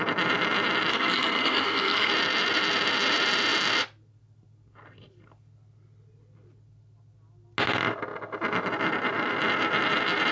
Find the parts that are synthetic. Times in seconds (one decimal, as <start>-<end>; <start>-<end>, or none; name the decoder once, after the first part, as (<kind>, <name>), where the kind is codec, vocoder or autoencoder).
0.9-2.1 (codec, SNAC)